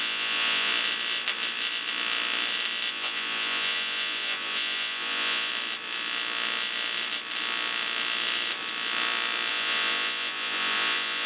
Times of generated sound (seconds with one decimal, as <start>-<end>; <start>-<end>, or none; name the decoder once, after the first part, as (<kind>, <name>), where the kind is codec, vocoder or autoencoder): 0.0-0.7 (vocoder, Vocos); 2.9-5.5; 9.5-11.3